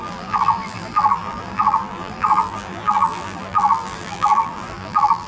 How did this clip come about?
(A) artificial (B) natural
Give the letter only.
A